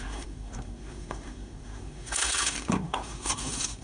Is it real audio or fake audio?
fake